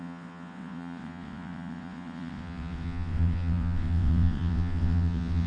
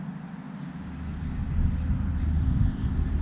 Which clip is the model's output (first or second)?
first